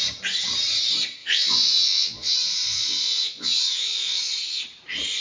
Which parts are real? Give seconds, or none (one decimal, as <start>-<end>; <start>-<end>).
0.0-1.2; 4.3-5.2